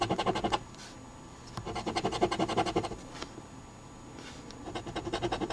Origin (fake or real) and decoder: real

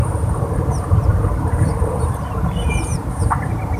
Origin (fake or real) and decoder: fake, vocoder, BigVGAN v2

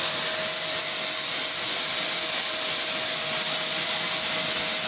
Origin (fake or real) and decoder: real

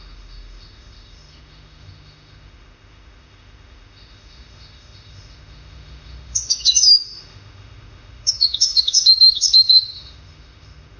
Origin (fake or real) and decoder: fake, autoencoder, DAC-VAE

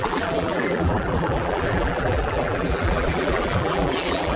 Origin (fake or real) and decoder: fake, vocoder, BigVGAN v2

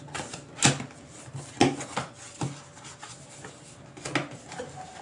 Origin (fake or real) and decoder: real